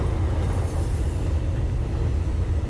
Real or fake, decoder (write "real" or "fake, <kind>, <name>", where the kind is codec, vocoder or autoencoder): real